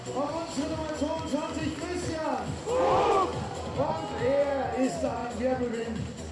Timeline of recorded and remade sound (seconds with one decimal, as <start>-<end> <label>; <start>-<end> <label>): 0.0-6.3 recorded